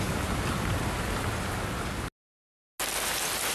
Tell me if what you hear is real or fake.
real